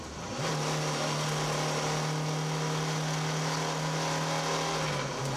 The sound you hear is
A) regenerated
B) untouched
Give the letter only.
B